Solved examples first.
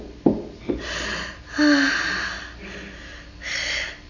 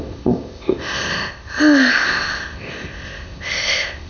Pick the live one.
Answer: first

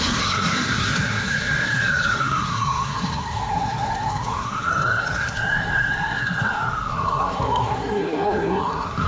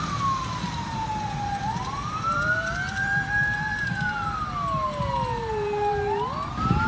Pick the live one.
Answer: second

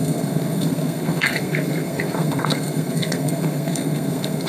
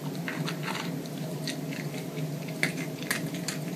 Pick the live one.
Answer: second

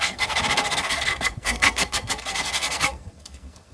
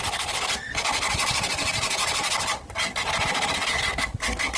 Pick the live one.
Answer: second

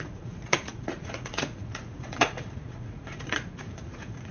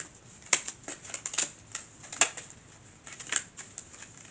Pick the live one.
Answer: second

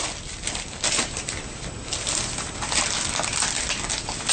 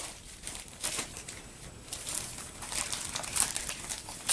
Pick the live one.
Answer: first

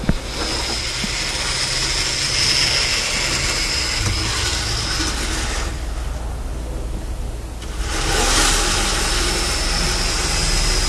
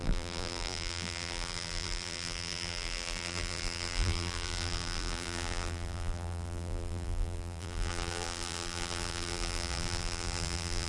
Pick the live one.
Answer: first